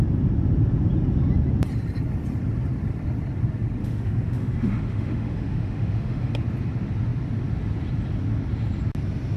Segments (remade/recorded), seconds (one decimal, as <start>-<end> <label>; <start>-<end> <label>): 0.0-3.8 recorded; 3.8-6.3 remade; 6.3-9.4 recorded